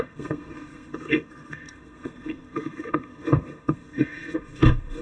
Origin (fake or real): fake